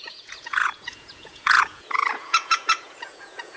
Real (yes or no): no